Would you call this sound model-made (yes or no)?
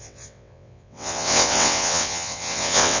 yes